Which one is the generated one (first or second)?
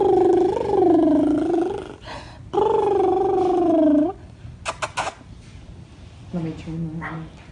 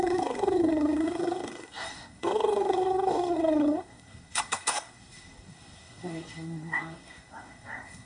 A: second